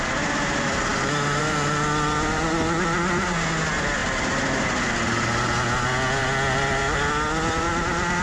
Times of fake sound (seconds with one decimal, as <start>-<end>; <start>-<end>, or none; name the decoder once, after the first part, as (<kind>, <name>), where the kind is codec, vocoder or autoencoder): none